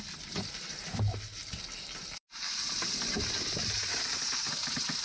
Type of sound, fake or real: fake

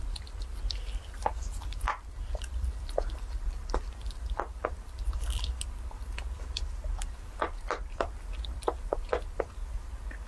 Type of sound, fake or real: fake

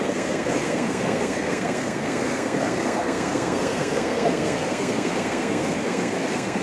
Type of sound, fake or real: fake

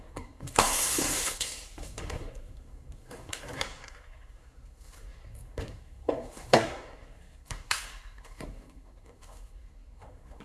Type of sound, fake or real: fake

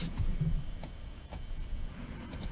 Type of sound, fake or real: fake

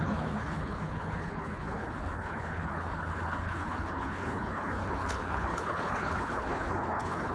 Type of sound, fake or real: fake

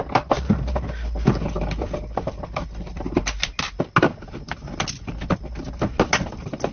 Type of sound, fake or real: real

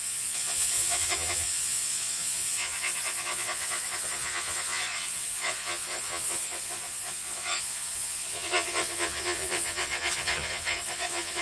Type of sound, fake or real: fake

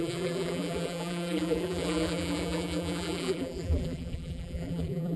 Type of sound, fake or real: fake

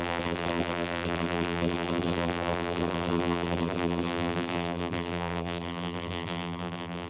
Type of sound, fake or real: fake